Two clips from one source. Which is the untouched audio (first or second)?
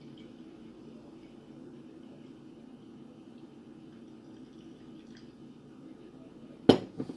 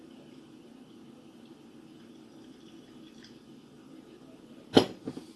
first